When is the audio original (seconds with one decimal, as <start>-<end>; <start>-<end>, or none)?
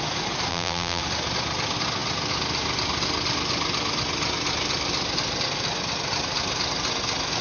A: 0.0-0.5; 1.0-7.4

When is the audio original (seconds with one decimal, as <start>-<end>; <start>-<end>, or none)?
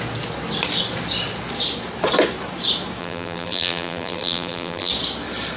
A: 0.0-3.0; 4.9-5.6